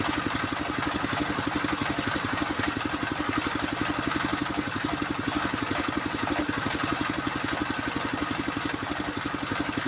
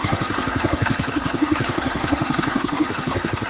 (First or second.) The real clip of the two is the first